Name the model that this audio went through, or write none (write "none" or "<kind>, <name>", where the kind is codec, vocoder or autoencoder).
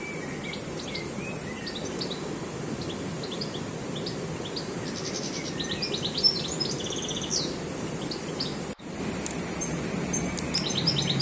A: none